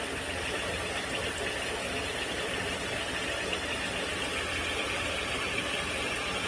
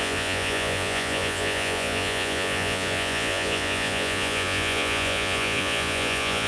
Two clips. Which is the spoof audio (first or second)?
second